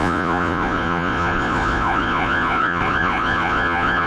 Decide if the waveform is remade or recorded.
remade